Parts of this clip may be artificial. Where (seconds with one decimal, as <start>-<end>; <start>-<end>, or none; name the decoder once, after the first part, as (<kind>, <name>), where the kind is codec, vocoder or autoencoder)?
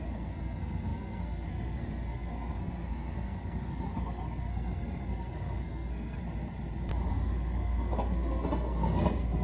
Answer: 0.0-6.2 (codec, SNAC); 7.1-9.4